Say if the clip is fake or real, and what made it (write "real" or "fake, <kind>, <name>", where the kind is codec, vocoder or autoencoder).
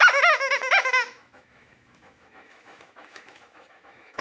fake, autoencoder, DAC-VAE